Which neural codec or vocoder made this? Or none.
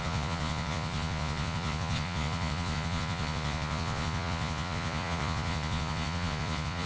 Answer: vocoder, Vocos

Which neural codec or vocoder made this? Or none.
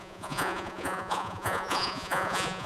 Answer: vocoder, Vocos